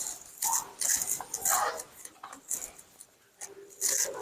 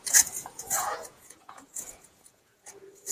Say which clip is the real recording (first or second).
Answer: first